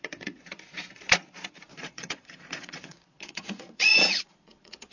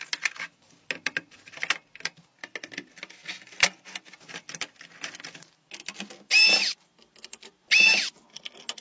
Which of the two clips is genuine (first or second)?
second